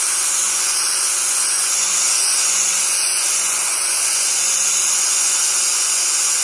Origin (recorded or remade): remade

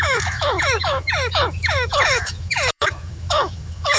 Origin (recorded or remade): remade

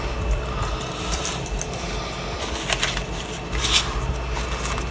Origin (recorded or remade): recorded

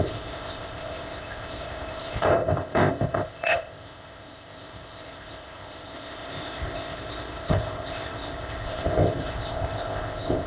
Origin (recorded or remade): remade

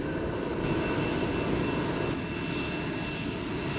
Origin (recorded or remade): recorded